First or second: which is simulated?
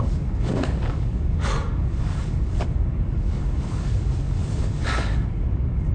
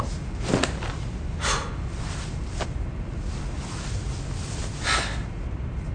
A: first